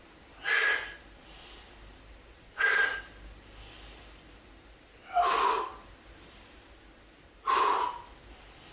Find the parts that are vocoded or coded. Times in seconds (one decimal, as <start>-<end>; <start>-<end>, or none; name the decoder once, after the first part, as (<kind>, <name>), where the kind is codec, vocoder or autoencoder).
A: none